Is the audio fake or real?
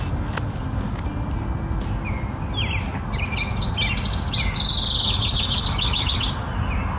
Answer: real